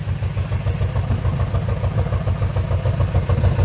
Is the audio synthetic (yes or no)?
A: no